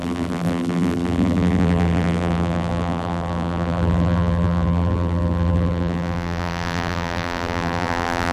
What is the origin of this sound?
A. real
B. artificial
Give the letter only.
B